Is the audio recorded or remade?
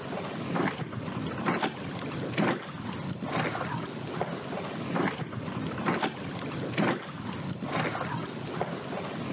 recorded